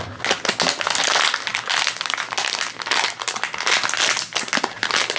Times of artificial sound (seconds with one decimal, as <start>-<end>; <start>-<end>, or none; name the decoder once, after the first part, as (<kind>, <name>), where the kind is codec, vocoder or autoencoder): none